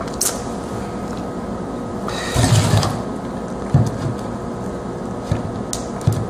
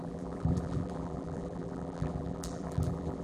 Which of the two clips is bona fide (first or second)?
first